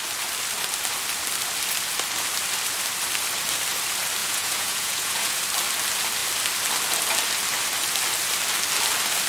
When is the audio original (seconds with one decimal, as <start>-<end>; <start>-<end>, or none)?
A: 0.0-4.2; 5.4-9.3